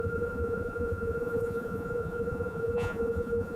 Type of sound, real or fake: fake